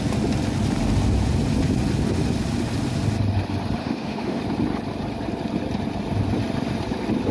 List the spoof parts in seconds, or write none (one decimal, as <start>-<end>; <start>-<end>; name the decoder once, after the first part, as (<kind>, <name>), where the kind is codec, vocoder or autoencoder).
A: 3.8-4.4 (autoencoder, DAC-VAE)